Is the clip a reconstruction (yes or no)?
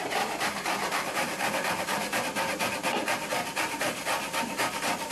no